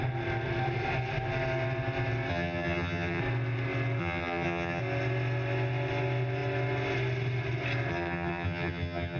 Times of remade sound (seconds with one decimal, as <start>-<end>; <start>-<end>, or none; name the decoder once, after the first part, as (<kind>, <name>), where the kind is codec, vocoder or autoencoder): 2.3-3.2 (vocoder, HiFi-GAN); 4.0-4.8; 7.9-9.2